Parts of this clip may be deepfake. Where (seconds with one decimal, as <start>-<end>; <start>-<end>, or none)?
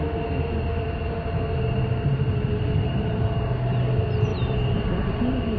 4.3-5.1